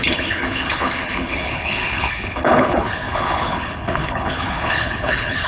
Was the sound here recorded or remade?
remade